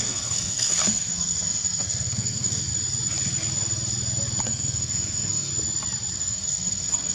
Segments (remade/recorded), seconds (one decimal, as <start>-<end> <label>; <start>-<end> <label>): 0.0-2.7 remade; 2.7-4.4 recorded; 4.4-5.5 remade; 5.5-6.1 recorded; 6.1-7.1 remade